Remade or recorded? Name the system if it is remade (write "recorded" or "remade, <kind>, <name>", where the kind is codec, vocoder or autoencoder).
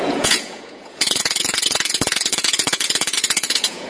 remade, vocoder, Vocos